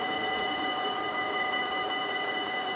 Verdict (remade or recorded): remade